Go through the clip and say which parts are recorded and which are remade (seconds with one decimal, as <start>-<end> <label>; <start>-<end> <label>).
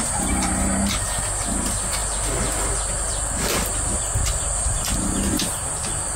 0.0-6.2 recorded